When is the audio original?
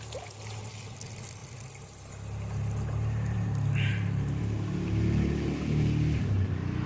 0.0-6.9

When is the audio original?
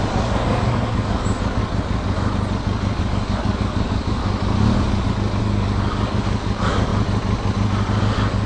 1.6-3.0; 4.2-5.4; 6.9-8.0